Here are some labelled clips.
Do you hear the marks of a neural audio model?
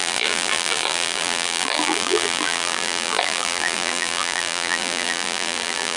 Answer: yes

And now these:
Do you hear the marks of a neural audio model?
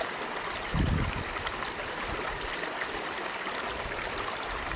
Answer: no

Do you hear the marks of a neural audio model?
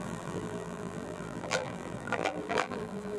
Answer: yes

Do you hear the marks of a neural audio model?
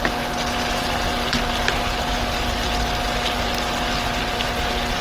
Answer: no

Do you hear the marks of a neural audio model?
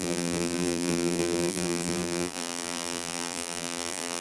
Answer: yes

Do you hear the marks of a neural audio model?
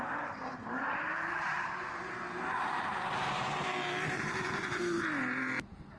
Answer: yes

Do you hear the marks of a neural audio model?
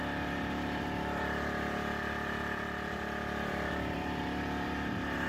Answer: yes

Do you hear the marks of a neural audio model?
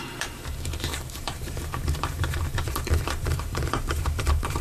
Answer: yes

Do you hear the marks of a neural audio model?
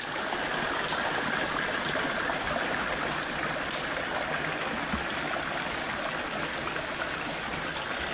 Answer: no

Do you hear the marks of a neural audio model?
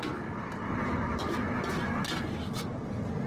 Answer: no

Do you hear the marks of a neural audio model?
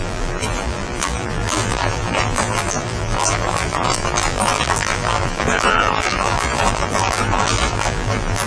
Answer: yes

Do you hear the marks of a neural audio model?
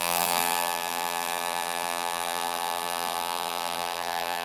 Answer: yes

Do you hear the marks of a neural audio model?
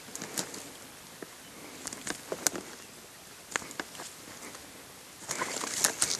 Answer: no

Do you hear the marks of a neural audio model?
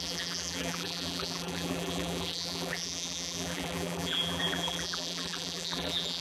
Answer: yes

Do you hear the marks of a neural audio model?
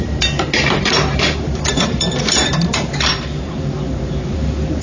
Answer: yes